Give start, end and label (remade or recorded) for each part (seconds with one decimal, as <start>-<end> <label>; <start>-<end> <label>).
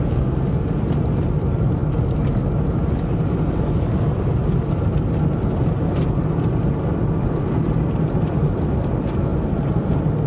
0.0-10.3 recorded